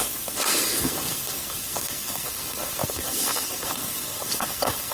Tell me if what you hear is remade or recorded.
remade